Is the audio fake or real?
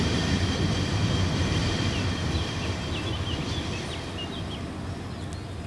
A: real